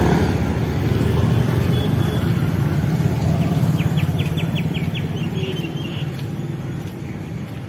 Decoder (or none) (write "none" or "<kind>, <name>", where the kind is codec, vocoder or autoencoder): none